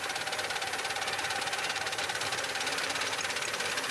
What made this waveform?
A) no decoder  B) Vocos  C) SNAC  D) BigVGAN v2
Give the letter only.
A